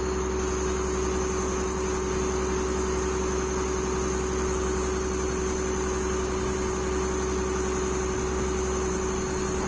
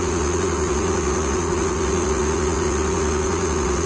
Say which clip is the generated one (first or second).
second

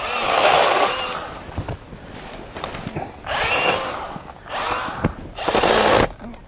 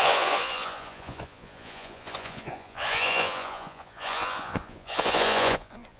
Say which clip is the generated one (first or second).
second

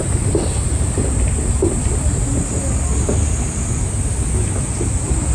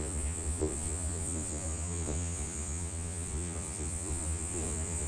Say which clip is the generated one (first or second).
second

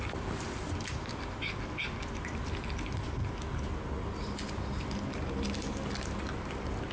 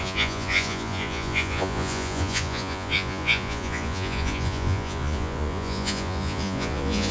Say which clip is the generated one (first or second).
second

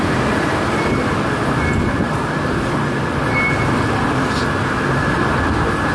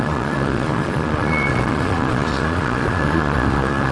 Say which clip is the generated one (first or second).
second